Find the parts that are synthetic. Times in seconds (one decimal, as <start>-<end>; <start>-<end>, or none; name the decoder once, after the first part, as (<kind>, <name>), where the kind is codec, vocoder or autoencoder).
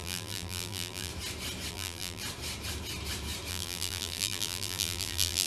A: 0.0-1.1 (vocoder, BigVGAN v2); 1.7-2.2; 3.5-5.5